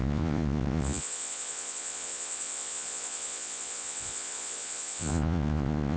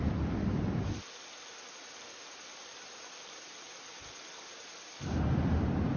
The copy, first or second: first